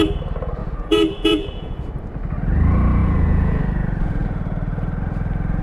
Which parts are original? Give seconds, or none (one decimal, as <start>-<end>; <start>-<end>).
0.0-0.6; 1.9-3.0; 3.6-5.6